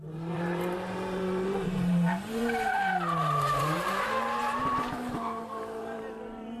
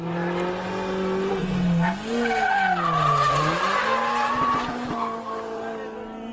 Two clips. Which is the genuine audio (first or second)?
second